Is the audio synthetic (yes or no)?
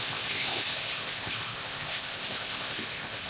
yes